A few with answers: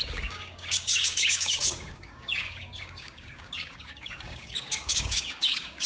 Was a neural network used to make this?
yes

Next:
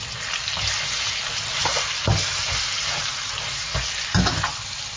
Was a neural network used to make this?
no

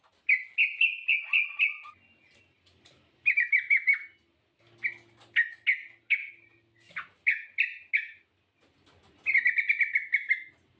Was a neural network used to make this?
no